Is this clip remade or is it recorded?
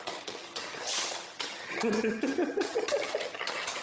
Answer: remade